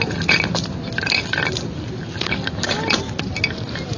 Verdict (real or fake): real